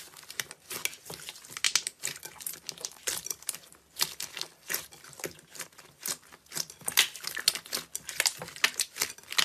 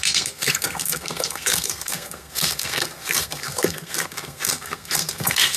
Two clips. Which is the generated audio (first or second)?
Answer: second